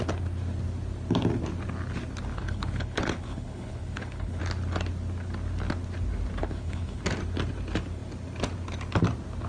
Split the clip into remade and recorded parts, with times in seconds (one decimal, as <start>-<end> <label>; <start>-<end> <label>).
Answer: 0.0-2.3 recorded; 2.3-4.4 remade; 4.4-6.4 recorded; 6.4-7.0 remade; 7.0-9.5 recorded